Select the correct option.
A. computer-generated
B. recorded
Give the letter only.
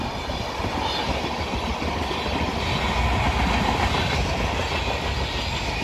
B